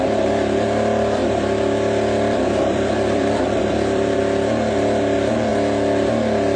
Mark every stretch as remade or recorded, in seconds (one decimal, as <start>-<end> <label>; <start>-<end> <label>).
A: 0.0-1.2 recorded; 1.2-4.2 remade; 4.2-6.6 recorded